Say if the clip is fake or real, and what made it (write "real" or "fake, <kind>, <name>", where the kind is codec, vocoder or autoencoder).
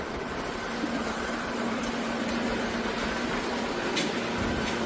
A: fake, vocoder, BigVGAN v2